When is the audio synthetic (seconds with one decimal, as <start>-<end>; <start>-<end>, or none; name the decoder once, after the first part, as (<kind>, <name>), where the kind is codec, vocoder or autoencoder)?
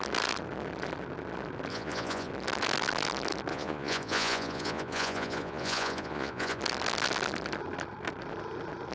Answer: 1.7-2.3 (vocoder, Vocos); 3.5-6.6